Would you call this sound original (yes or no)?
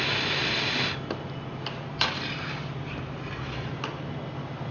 yes